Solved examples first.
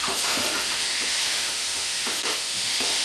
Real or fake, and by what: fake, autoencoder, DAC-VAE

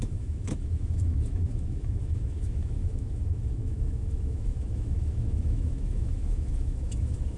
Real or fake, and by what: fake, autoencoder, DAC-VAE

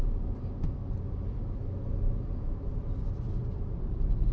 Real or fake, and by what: real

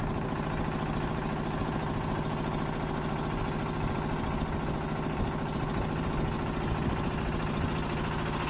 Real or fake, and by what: real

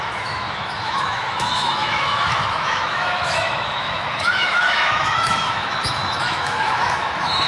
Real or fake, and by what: fake, autoencoder, DAC-VAE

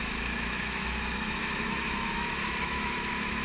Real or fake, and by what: fake, autoencoder, DAC-VAE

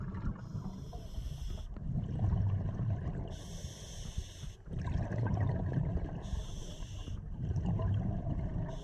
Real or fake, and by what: real